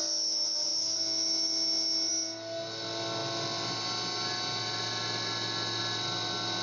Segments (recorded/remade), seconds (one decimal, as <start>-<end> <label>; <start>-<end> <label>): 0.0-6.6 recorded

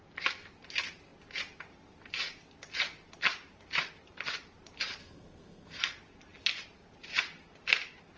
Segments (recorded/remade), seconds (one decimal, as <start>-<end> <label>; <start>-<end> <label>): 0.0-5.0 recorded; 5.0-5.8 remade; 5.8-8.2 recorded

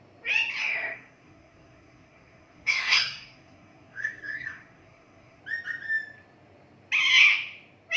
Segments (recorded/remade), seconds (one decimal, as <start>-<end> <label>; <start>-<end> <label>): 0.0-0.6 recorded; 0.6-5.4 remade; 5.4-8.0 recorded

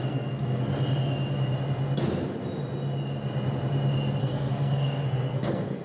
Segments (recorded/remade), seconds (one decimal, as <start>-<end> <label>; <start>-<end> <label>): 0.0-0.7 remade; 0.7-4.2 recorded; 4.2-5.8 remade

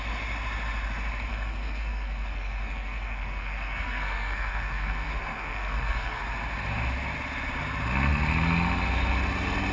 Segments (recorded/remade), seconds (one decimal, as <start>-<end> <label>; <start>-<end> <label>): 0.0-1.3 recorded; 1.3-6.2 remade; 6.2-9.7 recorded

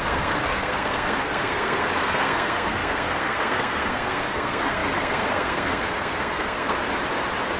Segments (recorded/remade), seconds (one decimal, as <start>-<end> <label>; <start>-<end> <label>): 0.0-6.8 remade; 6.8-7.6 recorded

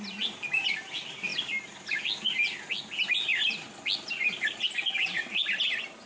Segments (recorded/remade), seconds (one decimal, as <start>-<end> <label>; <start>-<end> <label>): 0.0-6.1 recorded

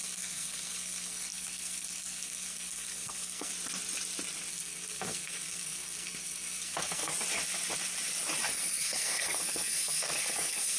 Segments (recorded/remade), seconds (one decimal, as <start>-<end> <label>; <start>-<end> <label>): 0.0-3.5 remade; 3.5-4.5 recorded; 4.5-7.1 remade; 7.1-8.6 recorded; 8.6-10.8 remade